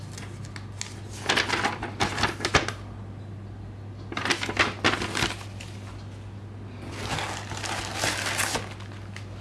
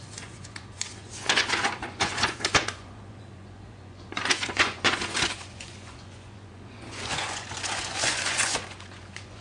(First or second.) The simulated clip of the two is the second